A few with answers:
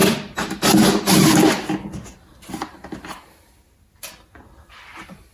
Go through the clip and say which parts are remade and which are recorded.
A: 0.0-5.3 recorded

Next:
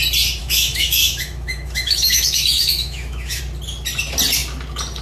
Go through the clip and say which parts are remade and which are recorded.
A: 0.0-0.4 recorded; 0.4-3.4 remade; 3.4-5.0 recorded

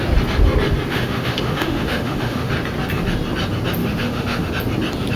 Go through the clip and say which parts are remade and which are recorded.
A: 0.0-0.9 recorded; 0.9-2.5 remade; 2.5-3.8 recorded; 3.8-4.5 remade; 4.5-5.2 recorded